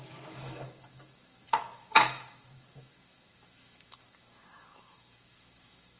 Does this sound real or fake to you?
fake